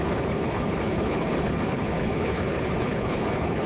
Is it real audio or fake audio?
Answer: fake